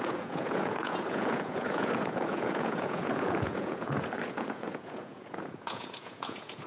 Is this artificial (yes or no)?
yes